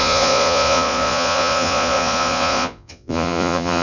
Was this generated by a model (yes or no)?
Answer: yes